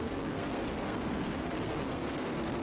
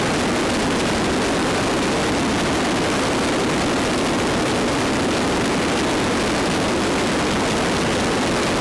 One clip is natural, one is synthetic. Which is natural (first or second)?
second